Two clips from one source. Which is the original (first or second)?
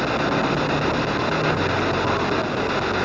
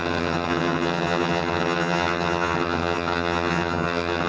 first